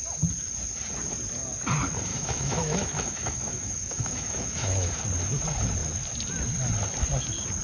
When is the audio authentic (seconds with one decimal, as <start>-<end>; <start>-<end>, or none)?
0.0-2.1; 4.9-7.6